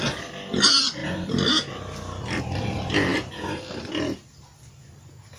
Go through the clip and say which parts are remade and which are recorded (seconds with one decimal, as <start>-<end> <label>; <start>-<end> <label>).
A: 0.0-5.4 recorded